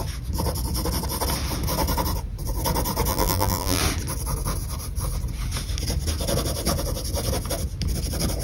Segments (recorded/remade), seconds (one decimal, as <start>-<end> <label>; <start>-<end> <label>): 0.0-3.1 recorded; 3.1-3.8 remade; 3.8-8.4 recorded

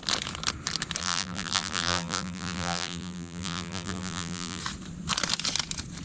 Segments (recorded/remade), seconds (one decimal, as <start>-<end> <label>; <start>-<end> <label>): 0.0-1.0 recorded; 1.0-4.6 remade; 4.6-6.0 recorded

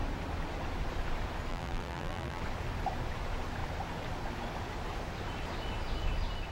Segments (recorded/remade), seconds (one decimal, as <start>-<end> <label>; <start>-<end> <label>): 0.0-1.5 recorded; 1.5-2.4 remade; 2.4-6.5 recorded

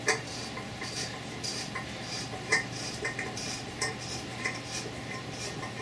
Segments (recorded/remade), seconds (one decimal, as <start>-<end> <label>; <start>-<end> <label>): 0.0-0.4 recorded; 0.4-3.9 remade; 3.9-5.8 recorded

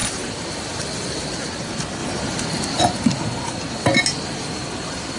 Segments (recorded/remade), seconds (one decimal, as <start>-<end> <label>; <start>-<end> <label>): 0.0-0.8 remade; 0.8-5.2 recorded

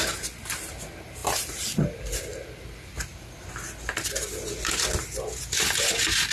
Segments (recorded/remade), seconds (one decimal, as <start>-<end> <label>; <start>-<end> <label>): 0.0-1.2 recorded; 1.2-3.5 remade; 3.5-6.3 recorded

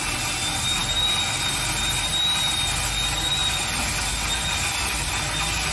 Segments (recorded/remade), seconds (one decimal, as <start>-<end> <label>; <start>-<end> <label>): 0.0-3.4 recorded; 3.4-4.1 remade; 4.1-5.7 recorded